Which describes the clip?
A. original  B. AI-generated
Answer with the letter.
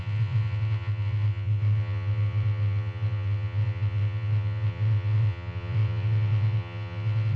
B